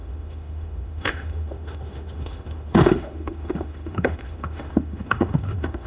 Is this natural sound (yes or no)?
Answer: no